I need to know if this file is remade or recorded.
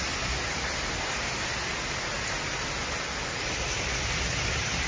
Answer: recorded